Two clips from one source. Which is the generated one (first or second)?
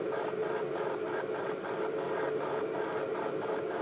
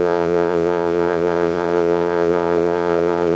second